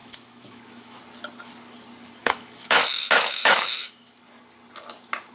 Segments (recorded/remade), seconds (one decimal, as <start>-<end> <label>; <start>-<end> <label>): 0.0-1.0 remade; 1.0-2.2 recorded; 2.2-4.1 remade; 4.1-5.3 recorded

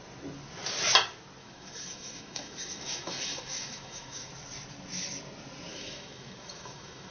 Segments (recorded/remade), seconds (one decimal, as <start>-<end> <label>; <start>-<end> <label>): 0.0-1.4 recorded; 1.4-4.3 remade; 4.3-5.7 recorded; 5.7-7.1 remade

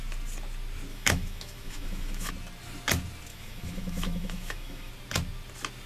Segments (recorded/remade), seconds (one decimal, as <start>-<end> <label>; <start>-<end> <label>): 0.0-0.9 recorded; 0.9-2.3 remade; 2.3-3.3 recorded; 3.3-4.9 remade; 4.9-5.9 recorded